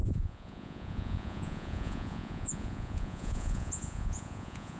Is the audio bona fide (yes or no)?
no